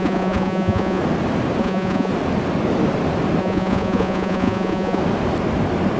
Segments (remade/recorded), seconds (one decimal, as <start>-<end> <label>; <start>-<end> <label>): 0.0-1.0 remade; 1.0-1.6 recorded; 1.6-2.1 remade; 2.1-3.4 recorded; 3.4-5.0 remade; 5.0-6.0 recorded